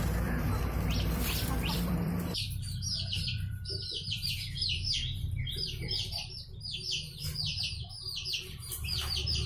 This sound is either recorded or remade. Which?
remade